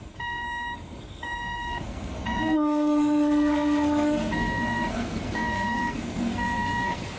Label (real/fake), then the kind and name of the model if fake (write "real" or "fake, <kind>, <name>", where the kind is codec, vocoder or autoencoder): fake, codec, SNAC